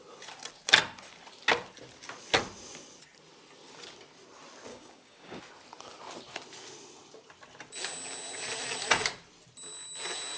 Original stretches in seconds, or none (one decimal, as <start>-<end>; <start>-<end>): 0.0-4.7; 5.4-10.4